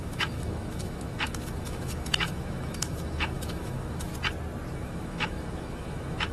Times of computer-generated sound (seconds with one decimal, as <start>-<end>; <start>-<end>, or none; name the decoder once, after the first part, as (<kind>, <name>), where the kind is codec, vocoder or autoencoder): 0.0-4.1 (autoencoder, DAC-VAE); 4.7-6.3